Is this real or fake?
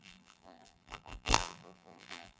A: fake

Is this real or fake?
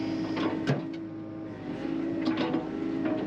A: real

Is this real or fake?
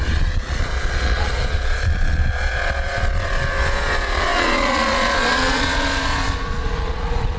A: fake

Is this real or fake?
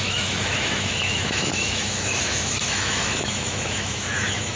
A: fake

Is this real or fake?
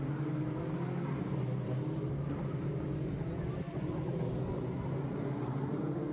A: real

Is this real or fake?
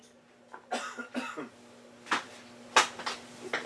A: real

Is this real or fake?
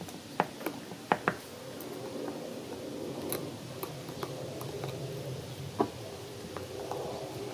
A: real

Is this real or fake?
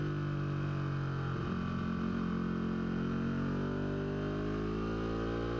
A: real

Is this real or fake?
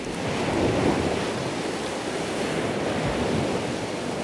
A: real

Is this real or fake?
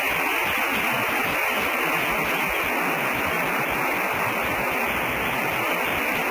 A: real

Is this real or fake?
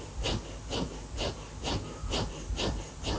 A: real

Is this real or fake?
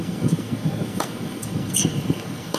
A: fake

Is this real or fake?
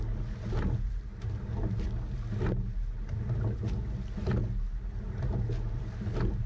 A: real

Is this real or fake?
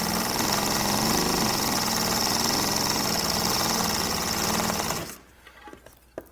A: real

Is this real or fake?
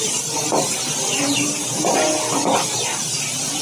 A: real